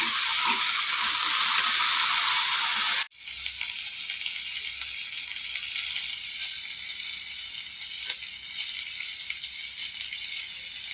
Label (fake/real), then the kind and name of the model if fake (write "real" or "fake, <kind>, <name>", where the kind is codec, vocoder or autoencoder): fake, vocoder, BigVGAN v2